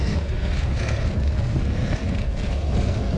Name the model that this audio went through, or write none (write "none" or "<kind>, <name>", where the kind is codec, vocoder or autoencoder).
codec, SNAC